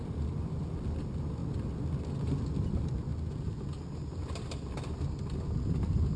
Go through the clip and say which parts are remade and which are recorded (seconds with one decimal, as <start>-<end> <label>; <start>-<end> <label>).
0.0-6.2 recorded